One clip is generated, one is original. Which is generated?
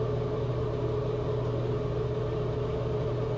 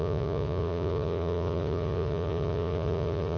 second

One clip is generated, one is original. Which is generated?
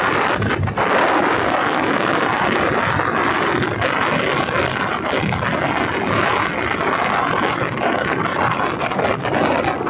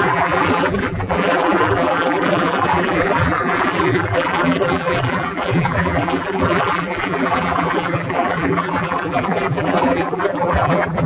second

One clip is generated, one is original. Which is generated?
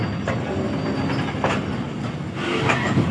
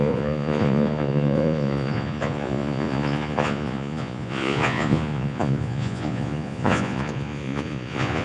second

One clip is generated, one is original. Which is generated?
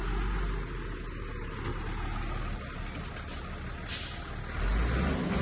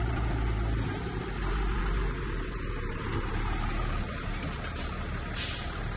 second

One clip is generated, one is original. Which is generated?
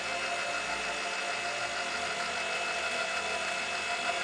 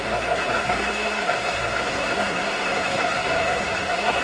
second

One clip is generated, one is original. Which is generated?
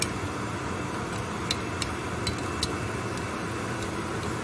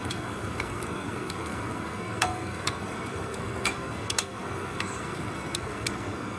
second